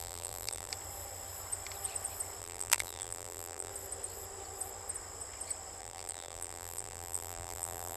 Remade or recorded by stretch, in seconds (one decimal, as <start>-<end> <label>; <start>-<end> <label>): 0.0-0.7 remade; 0.7-2.4 recorded; 2.4-3.7 remade; 3.7-5.8 recorded; 5.8-8.0 remade